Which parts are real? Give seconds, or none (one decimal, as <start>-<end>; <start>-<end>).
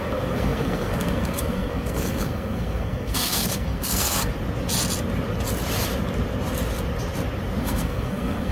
4.3-7.6